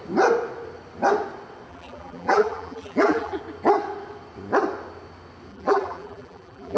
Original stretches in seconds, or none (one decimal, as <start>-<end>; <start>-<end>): 0.0-1.7; 3.4-5.5